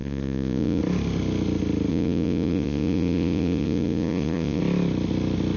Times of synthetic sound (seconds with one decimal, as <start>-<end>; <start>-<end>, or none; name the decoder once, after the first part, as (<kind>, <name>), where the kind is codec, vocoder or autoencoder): 0.0-0.8 (vocoder, Vocos); 1.9-4.6